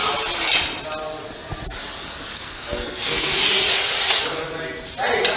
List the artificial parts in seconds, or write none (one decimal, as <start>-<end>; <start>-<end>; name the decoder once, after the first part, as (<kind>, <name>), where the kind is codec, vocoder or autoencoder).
2.3-3.4 (codec, SNAC)